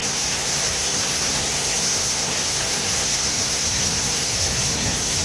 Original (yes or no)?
no